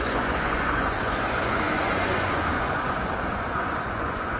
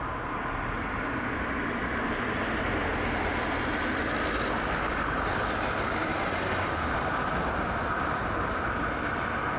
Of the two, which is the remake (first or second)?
first